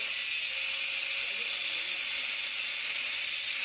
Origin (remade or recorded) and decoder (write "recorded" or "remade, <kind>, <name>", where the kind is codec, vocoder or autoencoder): recorded